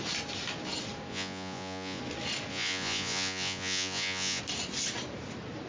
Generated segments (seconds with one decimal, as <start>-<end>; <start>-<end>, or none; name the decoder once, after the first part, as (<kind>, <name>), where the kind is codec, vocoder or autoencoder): 1.1-2.0 (vocoder, Vocos); 2.5-4.4